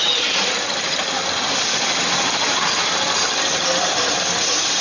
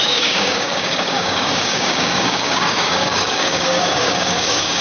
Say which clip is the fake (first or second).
second